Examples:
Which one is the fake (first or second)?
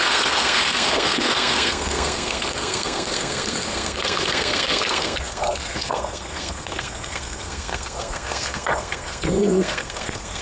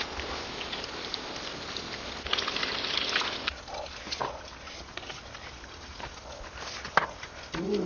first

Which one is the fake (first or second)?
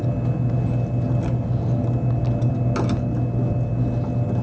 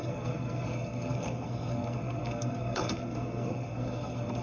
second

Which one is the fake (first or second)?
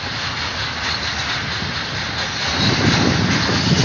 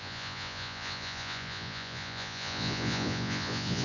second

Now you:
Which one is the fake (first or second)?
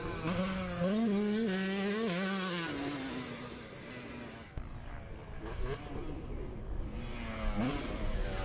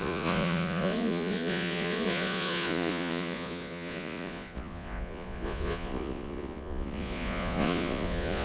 second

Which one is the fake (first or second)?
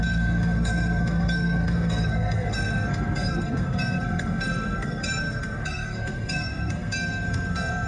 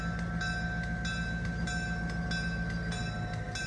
first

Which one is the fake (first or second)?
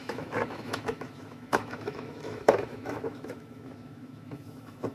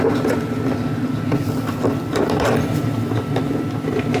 first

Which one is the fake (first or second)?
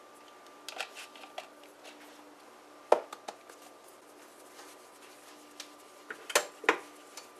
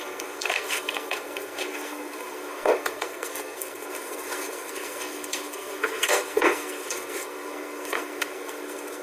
second